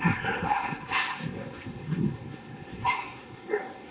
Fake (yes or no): yes